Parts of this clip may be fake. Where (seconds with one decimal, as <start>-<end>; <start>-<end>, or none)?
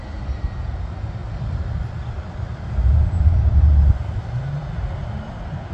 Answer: none